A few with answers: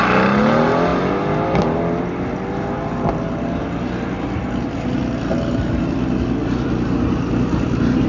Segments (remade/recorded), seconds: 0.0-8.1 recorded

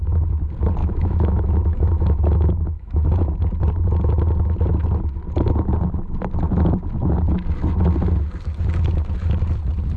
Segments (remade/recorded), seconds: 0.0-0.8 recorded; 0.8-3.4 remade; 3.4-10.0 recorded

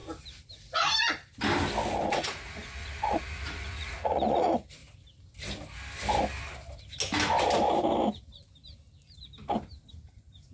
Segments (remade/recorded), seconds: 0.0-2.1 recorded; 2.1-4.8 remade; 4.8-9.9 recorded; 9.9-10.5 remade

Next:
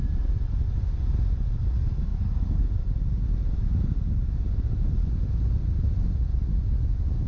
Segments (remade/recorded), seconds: 0.0-2.1 recorded; 2.1-6.5 remade; 6.5-7.3 recorded